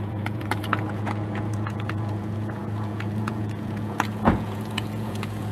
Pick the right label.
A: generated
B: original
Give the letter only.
A